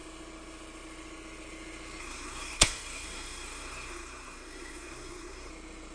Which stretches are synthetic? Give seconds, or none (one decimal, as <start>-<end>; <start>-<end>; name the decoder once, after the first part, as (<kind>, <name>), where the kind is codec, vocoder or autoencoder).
2.0-5.5 (codec, SNAC)